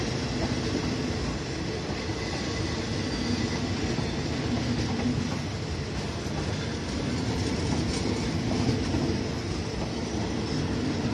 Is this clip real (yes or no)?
yes